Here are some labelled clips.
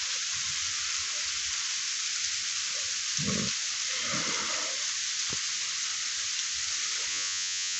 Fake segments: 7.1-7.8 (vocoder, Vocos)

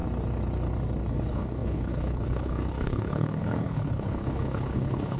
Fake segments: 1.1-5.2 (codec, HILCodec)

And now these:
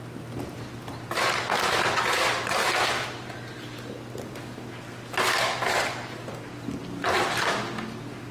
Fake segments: 6.8-7.6 (vocoder, BigVGAN v2)

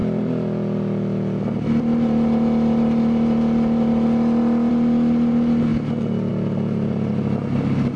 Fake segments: none

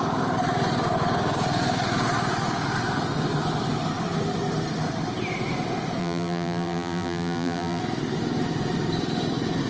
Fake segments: 6.0-7.8 (vocoder, BigVGAN v2)

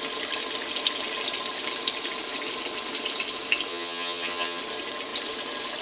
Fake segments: 3.7-4.6 (vocoder, HiFi-GAN)

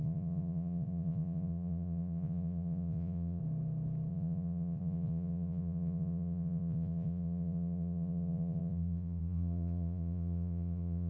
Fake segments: 0.0-3.4 (vocoder, Vocos); 4.1-11.1